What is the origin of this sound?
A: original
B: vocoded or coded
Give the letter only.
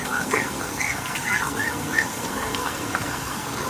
B